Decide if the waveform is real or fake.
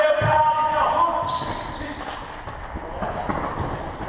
real